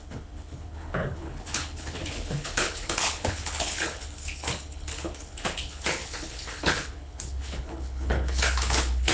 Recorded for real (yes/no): no